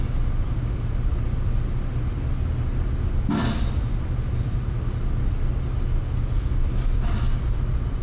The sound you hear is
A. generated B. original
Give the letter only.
B